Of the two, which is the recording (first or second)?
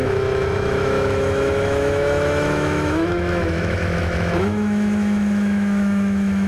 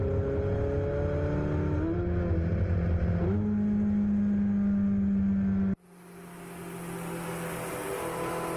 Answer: second